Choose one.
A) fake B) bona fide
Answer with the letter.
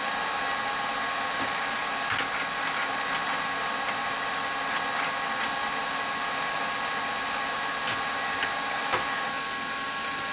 B